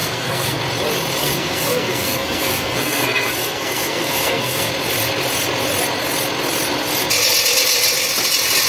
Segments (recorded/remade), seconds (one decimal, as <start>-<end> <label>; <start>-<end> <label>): 0.0-0.6 remade; 0.6-1.2 recorded; 1.2-4.7 remade; 4.7-8.7 recorded